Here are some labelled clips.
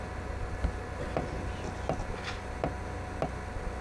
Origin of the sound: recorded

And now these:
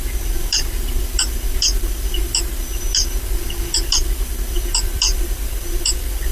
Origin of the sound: remade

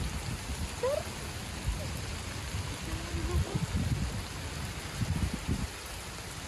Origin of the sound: recorded